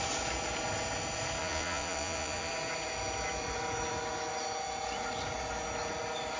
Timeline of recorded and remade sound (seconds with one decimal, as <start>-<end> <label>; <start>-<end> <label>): 0.0-1.4 recorded; 1.4-2.5 remade; 2.5-6.4 recorded